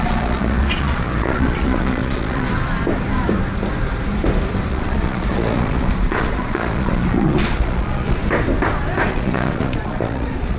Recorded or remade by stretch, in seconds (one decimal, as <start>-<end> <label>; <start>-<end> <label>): 0.0-2.5 remade; 2.5-4.7 recorded; 4.7-8.2 remade; 8.2-9.1 recorded; 9.1-10.6 remade